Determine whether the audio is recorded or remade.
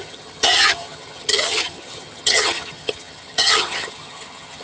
remade